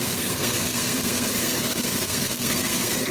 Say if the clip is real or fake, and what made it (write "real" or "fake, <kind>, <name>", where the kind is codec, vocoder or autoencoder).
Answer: fake, codec, SNAC